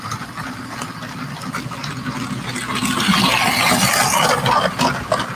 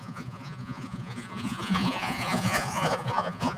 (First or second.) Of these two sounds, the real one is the first